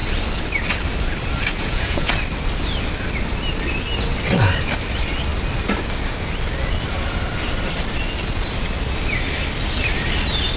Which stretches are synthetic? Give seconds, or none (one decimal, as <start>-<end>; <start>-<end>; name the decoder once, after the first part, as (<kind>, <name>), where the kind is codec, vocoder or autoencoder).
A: 1.5-2.1 (vocoder, Vocos)